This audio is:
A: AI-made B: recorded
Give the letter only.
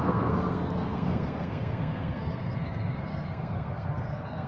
A